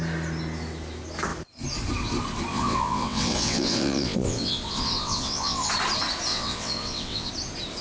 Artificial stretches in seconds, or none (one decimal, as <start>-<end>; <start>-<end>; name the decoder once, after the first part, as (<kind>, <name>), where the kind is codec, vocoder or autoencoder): 2.5-5.7 (vocoder, WaveNeXt); 6.3-7.3